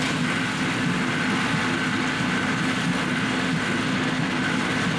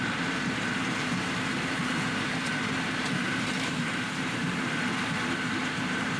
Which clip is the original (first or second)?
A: first